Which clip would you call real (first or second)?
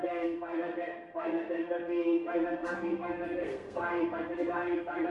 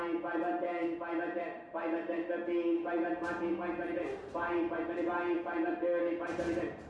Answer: second